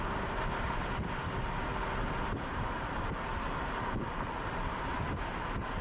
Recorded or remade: recorded